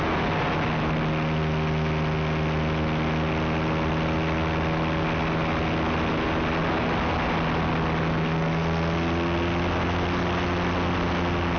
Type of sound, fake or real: real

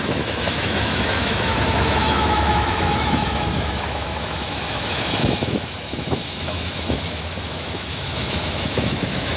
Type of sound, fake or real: fake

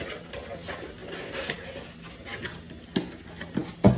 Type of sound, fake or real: real